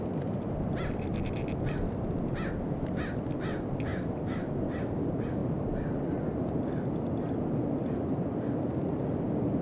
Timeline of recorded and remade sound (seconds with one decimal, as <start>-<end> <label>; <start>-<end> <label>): 0.0-9.6 recorded